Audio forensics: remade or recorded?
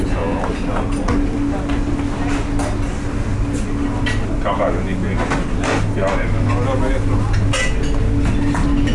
recorded